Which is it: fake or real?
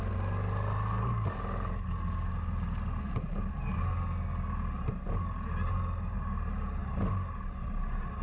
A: real